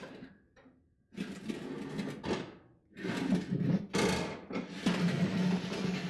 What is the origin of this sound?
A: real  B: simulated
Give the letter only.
A